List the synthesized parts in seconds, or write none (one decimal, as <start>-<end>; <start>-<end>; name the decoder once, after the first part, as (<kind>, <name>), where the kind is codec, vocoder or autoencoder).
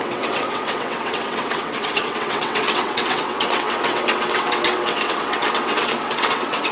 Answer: 0.0-6.7 (vocoder, WaveNeXt)